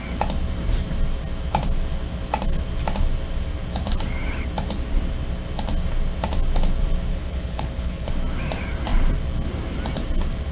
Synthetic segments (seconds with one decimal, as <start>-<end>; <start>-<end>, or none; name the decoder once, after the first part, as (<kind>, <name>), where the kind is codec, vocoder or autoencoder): 7.1-8.1 (codec, HILCodec)